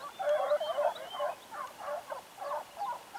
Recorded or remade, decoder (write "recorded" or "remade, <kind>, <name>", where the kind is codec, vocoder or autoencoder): recorded